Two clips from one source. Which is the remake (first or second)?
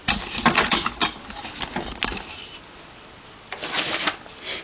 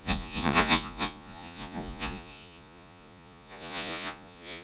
second